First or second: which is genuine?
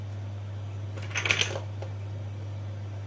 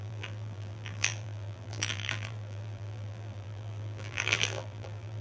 first